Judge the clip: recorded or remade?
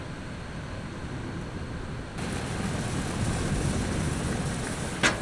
recorded